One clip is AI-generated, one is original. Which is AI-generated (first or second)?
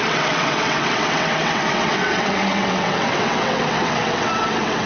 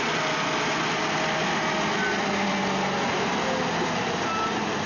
first